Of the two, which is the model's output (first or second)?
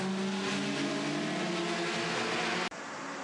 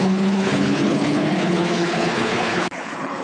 second